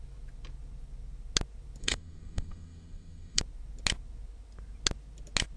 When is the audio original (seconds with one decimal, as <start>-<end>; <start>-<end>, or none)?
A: 0.0-1.8; 3.4-5.6

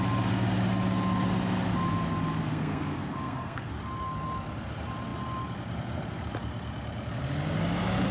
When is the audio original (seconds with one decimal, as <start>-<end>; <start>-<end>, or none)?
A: 0.0-2.5; 3.7-8.1